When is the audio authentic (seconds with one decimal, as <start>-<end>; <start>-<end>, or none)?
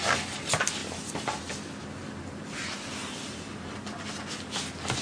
0.0-2.0; 4.2-5.0